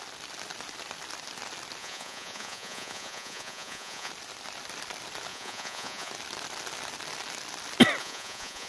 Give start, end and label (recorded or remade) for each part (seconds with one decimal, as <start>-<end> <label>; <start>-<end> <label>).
0.0-1.8 recorded; 1.8-4.1 remade; 4.1-5.3 recorded; 5.3-6.1 remade; 6.1-8.0 recorded; 8.0-8.7 remade